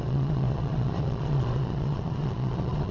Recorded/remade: remade